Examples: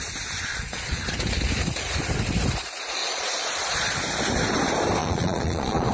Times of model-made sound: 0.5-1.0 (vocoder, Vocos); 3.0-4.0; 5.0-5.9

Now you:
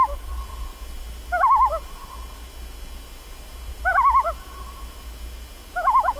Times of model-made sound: none

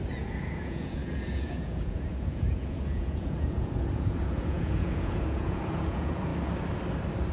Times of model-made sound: 0.0-6.3 (vocoder, Vocos)

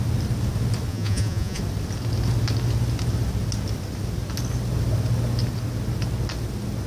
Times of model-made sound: 0.9-1.6 (vocoder, Vocos)

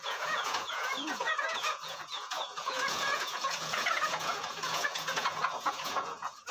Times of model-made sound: 0.0-6.5 (vocoder, Vocos)